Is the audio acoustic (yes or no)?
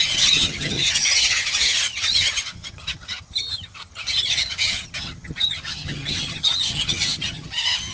no